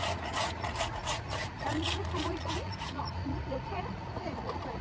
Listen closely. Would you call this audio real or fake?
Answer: fake